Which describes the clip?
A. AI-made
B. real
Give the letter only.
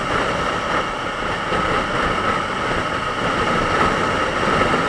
B